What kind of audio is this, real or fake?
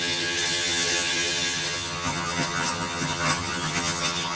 fake